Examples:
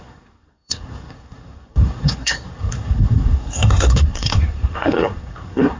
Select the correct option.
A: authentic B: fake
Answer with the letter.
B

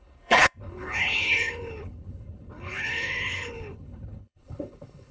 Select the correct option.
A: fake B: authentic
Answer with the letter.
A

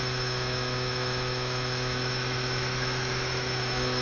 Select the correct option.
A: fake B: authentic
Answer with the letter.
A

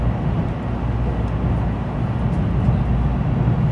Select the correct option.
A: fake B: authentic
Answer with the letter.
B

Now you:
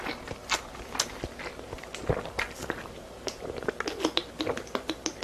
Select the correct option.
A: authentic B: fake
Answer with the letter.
A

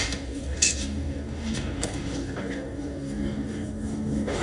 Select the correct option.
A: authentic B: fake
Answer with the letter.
B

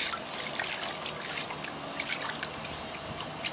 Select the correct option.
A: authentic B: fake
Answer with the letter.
A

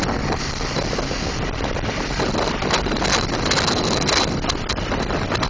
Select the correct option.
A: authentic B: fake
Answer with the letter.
A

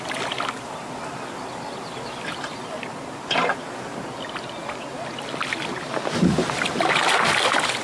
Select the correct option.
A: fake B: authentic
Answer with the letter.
B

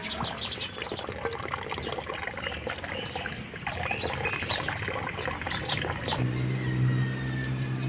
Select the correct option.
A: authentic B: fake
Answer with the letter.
A